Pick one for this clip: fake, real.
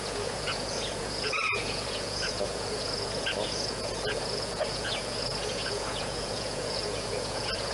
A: fake